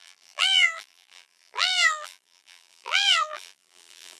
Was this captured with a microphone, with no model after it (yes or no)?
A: no